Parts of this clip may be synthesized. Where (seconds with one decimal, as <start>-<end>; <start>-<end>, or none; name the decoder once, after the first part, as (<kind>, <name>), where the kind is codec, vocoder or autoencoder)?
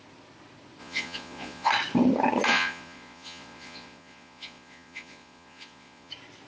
0.8-1.7 (vocoder, Vocos); 2.5-6.1